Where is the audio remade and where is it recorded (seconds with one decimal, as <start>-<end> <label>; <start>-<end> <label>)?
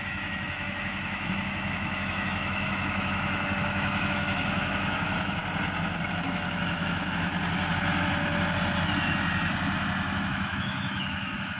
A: 0.0-5.4 remade; 5.4-6.0 recorded; 6.0-7.3 remade; 7.3-10.2 recorded; 10.2-11.6 remade